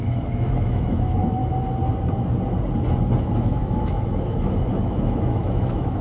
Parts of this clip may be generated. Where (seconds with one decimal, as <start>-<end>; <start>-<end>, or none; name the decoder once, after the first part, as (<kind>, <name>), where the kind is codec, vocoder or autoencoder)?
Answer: 0.0-1.4 (autoencoder, DAC-VAE); 3.2-6.0